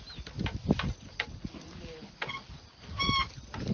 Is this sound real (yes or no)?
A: yes